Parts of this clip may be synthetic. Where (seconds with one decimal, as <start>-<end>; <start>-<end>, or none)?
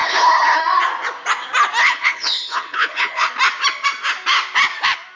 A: 0.0-0.6; 1.8-3.3